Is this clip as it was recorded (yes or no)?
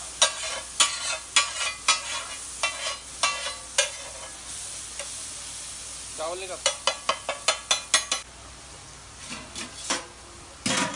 yes